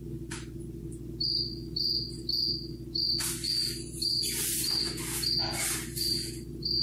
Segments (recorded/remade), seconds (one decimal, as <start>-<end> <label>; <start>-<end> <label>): 0.0-6.8 recorded